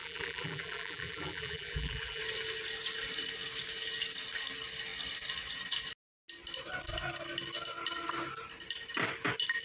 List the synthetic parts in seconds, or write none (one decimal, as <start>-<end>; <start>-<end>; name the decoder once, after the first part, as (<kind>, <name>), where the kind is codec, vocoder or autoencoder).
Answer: 0.0-2.2 (vocoder, BigVGAN v2)